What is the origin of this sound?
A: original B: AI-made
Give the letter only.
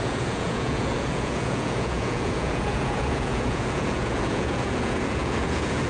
B